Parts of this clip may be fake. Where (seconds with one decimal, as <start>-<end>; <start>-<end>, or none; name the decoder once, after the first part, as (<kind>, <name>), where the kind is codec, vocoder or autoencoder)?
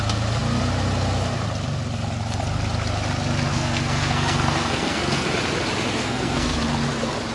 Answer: 3.5-5.3 (codec, SNAC); 6.0-6.6